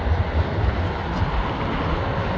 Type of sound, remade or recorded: recorded